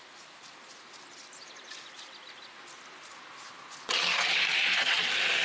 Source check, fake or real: real